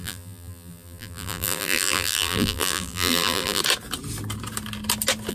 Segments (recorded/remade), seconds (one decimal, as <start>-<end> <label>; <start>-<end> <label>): 0.0-3.6 remade; 3.6-5.3 recorded